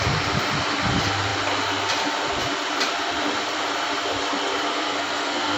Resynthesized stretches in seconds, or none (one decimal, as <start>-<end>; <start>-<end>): 4.7-5.6